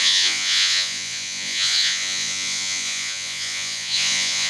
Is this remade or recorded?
remade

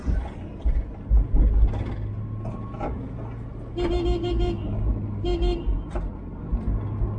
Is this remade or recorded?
recorded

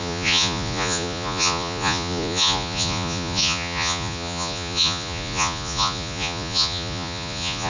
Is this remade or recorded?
remade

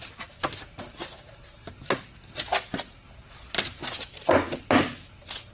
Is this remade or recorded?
recorded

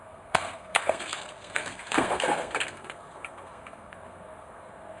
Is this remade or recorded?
remade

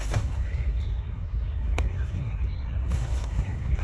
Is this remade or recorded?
remade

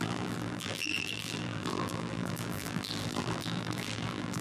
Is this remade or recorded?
remade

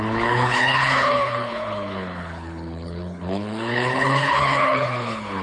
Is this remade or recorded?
remade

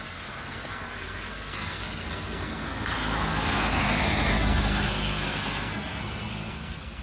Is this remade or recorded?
remade